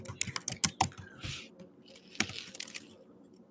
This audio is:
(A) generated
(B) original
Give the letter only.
B